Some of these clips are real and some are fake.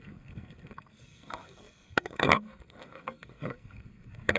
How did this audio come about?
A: fake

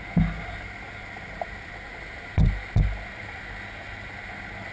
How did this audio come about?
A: real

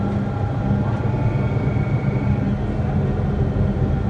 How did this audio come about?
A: real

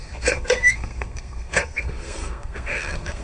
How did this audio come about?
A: fake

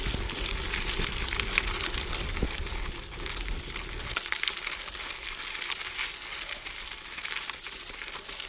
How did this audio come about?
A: real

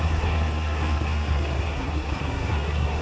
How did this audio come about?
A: fake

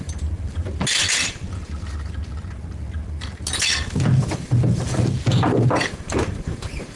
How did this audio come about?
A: real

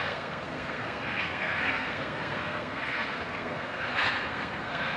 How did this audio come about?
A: fake